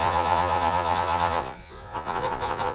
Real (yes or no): no